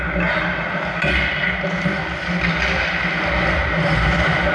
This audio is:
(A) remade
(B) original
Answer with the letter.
B